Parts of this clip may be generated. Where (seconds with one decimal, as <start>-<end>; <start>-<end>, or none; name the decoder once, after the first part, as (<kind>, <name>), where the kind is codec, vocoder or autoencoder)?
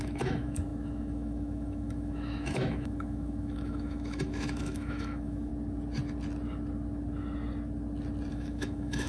0.0-5.5 (autoencoder, DAC-VAE); 8.3-9.1